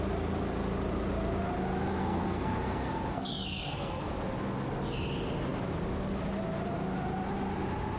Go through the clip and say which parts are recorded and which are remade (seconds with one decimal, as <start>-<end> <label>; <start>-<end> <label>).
0.0-2.0 recorded; 2.0-4.1 remade; 4.1-8.0 recorded